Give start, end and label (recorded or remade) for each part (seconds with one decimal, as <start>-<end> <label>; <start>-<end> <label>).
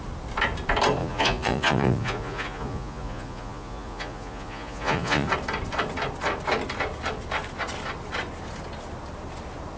0.0-1.0 recorded; 1.0-5.3 remade; 5.3-9.8 recorded